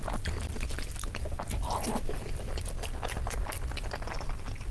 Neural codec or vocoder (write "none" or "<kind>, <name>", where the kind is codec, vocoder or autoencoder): none